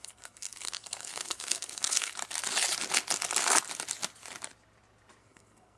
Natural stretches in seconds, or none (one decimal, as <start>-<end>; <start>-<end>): 2.1-5.2